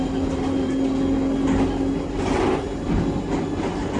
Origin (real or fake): real